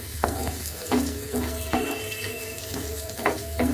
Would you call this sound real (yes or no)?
no